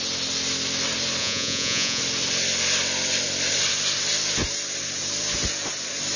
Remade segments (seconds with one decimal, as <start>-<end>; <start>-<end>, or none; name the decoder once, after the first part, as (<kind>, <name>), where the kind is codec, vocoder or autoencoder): 1.2-2.0 (vocoder, Vocos)